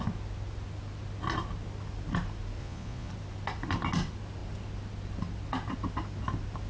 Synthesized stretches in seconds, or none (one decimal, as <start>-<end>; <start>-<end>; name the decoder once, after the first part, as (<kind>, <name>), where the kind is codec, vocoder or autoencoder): 2.6-3.1 (vocoder, Vocos)